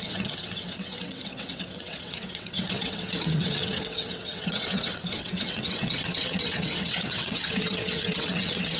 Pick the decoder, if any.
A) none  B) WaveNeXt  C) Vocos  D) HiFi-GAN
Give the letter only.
B